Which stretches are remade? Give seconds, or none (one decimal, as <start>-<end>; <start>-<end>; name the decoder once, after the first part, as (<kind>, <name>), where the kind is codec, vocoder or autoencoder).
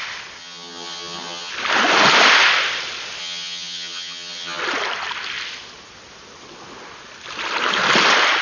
0.4-1.5 (vocoder, HiFi-GAN); 3.2-4.6